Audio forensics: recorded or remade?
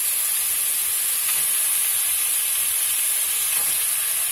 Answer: recorded